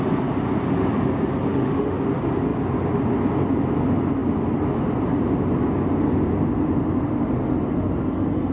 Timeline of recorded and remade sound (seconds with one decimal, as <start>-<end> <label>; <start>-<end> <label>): 0.0-1.5 recorded; 1.5-2.0 remade; 2.0-8.5 recorded